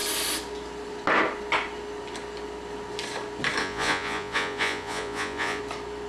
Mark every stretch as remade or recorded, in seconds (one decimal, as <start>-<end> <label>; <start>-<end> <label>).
0.0-3.6 recorded; 3.6-5.6 remade; 5.6-6.1 recorded